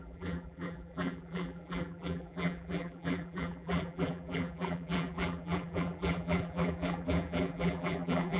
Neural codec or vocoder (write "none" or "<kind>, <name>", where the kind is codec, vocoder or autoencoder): vocoder, BigVGAN v2